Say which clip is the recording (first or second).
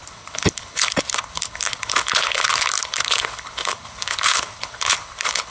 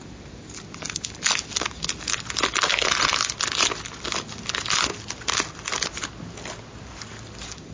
second